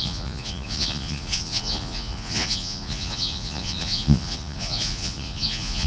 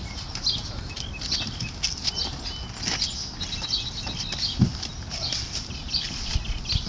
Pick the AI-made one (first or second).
first